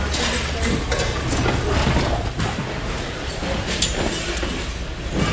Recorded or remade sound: recorded